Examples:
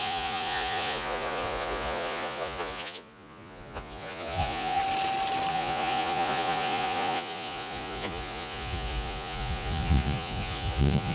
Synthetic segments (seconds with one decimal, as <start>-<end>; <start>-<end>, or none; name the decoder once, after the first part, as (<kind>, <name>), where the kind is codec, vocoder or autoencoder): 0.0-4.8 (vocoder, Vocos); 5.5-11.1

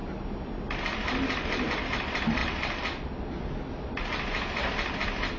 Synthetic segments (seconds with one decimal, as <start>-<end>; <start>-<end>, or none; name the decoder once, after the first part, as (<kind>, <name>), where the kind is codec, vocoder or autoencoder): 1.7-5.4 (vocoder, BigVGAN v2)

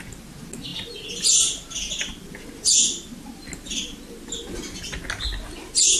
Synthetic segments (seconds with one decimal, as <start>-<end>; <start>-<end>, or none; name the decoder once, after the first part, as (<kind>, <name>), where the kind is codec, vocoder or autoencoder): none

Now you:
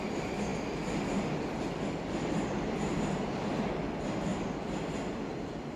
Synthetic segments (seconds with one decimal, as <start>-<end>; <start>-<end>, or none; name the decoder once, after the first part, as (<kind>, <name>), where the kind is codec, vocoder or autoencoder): none

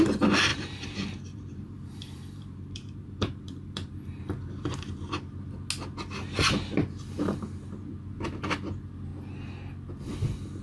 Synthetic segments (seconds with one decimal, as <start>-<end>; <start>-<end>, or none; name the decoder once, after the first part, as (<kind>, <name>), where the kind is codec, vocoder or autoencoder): 0.5-4.2 (vocoder, BigVGAN v2)

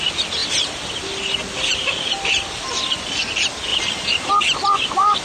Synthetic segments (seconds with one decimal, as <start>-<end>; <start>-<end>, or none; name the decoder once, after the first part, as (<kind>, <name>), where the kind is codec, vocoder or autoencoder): none